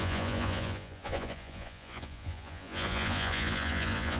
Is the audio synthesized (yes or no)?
yes